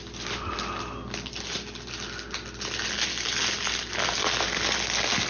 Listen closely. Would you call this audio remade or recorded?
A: recorded